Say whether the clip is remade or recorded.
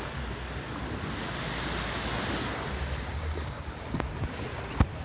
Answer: recorded